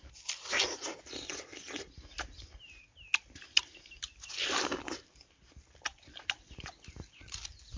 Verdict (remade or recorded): recorded